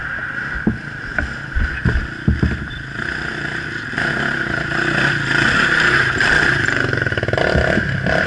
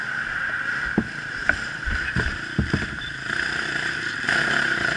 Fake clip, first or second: second